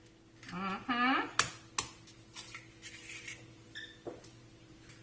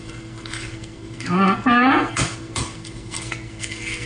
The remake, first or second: second